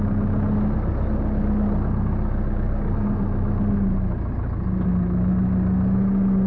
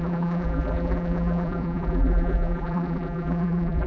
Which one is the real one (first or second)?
first